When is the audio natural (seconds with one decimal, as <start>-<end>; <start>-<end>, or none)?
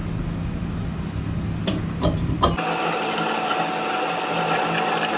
0.0-5.2